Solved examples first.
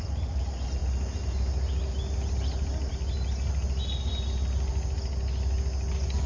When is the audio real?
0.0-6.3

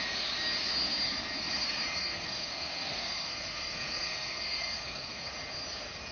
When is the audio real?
0.0-2.0; 5.3-6.1

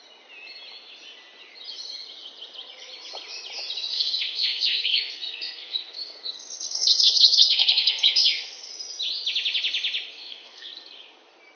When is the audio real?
0.0-3.9; 8.7-10.1; 10.7-11.6

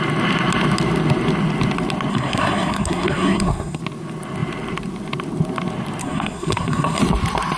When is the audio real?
0.0-2.1; 3.8-6.0; 7.0-7.6